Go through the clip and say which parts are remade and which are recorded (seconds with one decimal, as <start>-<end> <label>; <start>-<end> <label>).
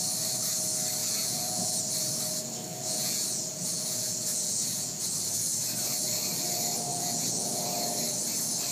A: 0.0-1.0 recorded; 1.0-1.8 remade; 1.8-2.7 recorded; 2.7-5.1 remade; 5.1-6.9 recorded; 6.9-7.7 remade; 7.7-8.7 recorded